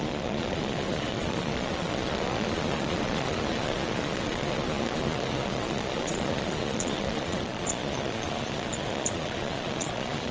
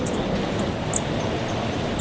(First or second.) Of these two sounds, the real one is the second